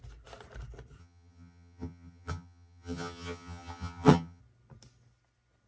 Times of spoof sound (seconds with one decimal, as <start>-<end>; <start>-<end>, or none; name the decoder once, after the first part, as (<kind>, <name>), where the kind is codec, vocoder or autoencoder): 1.0-4.4 (vocoder, HiFi-GAN)